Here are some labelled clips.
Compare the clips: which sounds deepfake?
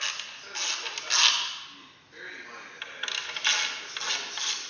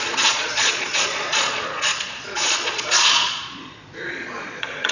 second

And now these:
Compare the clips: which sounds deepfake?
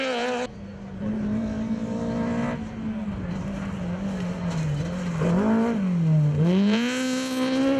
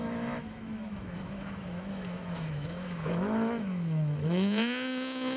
second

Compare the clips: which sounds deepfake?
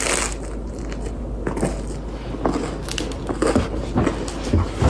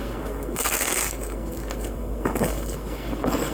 second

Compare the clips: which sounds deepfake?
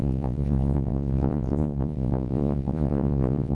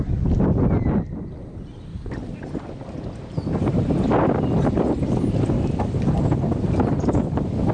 first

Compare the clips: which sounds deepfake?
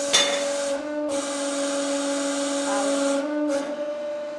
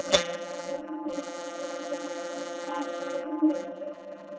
second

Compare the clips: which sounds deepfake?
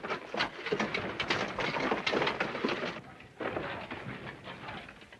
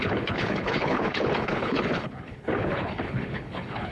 second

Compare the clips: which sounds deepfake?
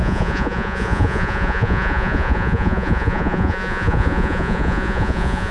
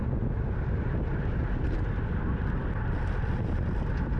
first